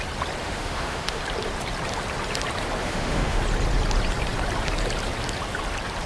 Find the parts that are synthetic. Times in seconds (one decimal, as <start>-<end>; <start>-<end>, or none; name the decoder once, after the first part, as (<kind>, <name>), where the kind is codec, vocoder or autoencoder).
0.4-1.2 (autoencoder, DAC-VAE); 2.8-3.4

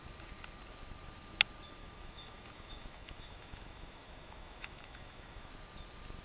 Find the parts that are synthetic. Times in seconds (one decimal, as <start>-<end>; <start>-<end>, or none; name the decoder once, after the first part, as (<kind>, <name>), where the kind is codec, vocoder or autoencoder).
1.8-5.5 (autoencoder, DAC-VAE)